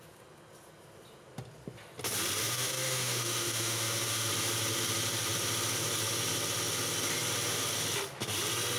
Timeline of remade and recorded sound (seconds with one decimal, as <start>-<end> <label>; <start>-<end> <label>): 0.0-2.4 recorded; 2.4-4.3 remade; 4.3-8.8 recorded